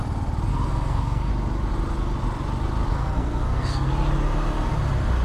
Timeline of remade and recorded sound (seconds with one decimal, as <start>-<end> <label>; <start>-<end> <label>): 0.0-0.5 recorded; 0.5-1.3 remade; 1.3-2.9 recorded; 2.9-3.9 remade; 3.9-5.2 recorded